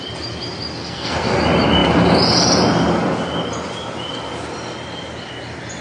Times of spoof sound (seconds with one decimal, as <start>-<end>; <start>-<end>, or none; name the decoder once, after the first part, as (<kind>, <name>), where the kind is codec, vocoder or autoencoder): 0.8-1.4 (codec, SNAC)